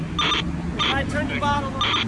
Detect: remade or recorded recorded